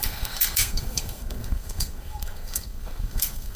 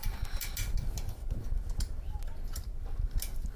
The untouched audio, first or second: second